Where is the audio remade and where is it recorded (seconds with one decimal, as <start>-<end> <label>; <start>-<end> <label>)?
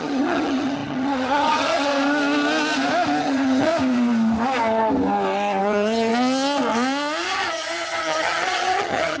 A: 0.0-1.9 remade; 1.9-3.2 recorded; 3.2-3.7 remade; 3.7-5.6 recorded; 5.6-6.1 remade; 6.1-7.2 recorded; 7.2-9.2 remade